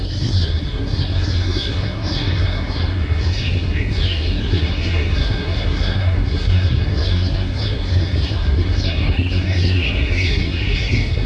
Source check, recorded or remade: remade